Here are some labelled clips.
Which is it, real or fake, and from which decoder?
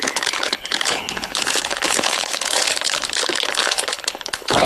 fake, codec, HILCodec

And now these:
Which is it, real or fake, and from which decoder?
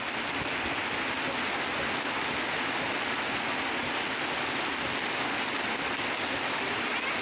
real